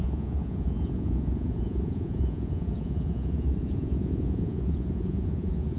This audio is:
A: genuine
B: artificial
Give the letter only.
B